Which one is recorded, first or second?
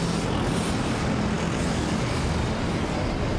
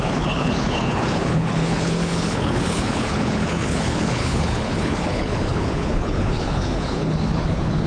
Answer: first